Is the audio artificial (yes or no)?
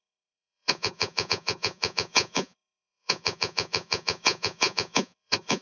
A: yes